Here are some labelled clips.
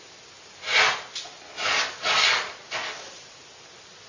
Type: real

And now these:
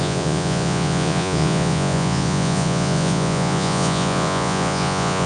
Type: fake